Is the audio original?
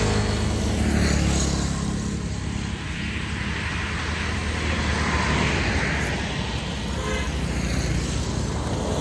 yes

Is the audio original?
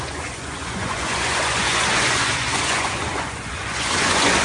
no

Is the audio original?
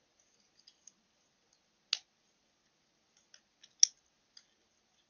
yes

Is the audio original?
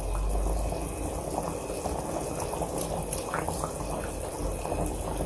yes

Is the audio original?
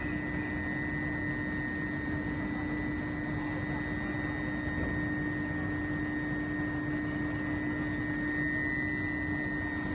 yes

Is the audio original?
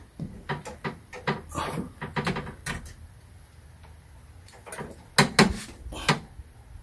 yes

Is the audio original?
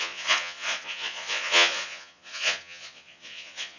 no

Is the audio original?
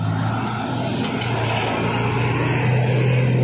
yes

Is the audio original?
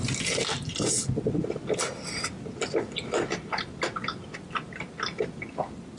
yes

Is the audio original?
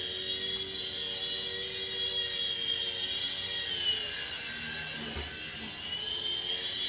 yes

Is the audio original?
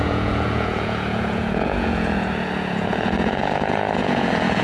no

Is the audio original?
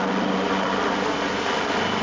yes